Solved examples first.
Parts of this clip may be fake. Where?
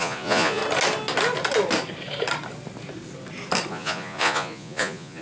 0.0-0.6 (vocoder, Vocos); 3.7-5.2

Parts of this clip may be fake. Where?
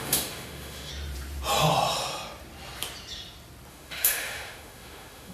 0.0-0.9 (autoencoder, DAC-VAE); 3.7-5.3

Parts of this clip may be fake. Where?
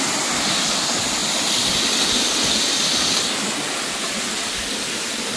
none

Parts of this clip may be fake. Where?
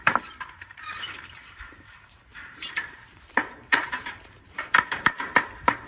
0.0-5.9 (vocoder, BigVGAN v2)